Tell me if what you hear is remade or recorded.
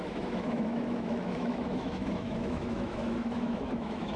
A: remade